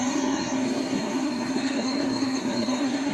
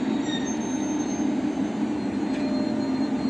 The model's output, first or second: first